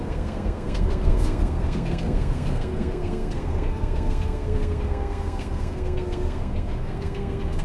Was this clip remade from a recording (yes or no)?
yes